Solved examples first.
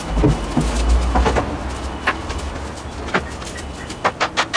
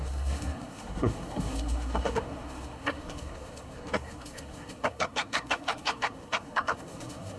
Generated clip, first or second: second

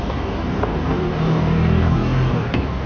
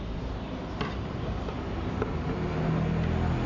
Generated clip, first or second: first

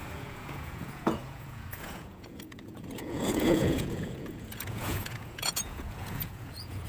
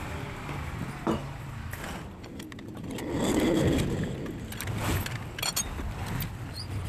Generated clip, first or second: first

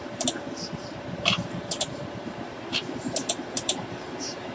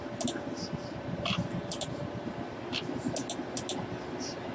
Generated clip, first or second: first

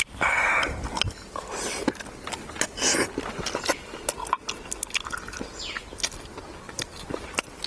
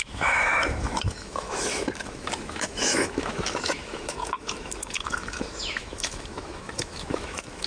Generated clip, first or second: second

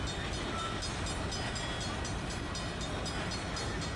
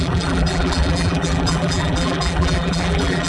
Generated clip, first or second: second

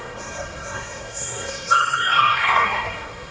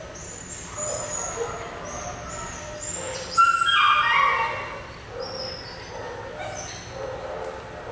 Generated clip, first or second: first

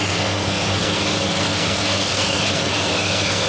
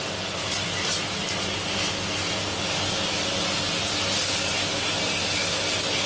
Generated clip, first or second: first